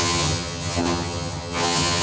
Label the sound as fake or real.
fake